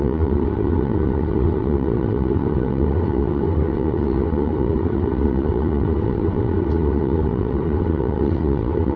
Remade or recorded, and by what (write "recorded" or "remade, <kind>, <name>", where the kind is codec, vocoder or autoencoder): remade, vocoder, WaveNeXt